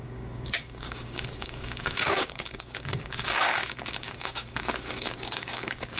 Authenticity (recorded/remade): remade